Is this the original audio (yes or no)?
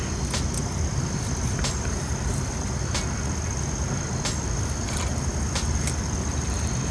yes